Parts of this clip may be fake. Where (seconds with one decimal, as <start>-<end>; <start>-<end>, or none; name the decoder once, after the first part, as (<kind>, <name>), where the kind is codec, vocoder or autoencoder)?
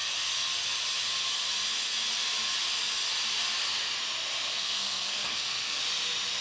4.5-5.8 (codec, SNAC)